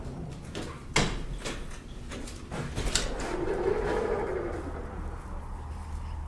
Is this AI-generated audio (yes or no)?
no